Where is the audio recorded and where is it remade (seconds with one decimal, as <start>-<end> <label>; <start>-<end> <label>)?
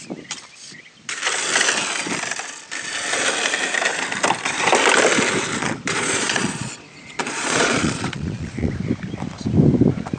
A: 0.0-5.6 recorded; 5.6-8.7 remade; 8.7-10.2 recorded